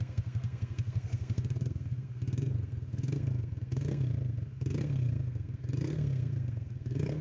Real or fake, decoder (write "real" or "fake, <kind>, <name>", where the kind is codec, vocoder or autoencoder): fake, codec, SNAC